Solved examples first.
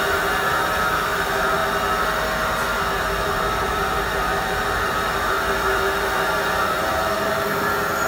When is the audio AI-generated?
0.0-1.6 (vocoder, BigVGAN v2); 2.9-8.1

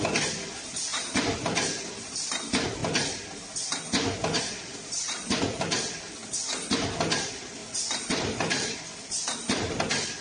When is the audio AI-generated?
0.0-2.8 (vocoder, BigVGAN v2); 4.4-6.2; 7.0-7.6; 8.1-10.2

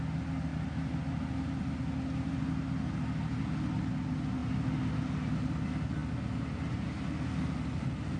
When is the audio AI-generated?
none

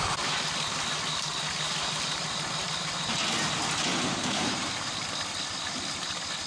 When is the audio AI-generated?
3.9-4.7 (vocoder, BigVGAN v2)

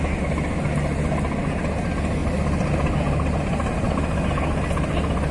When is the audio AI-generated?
none

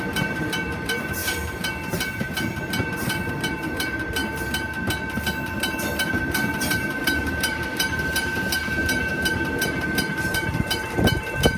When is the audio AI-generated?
0.0-4.2 (vocoder, BigVGAN v2); 6.1-11.6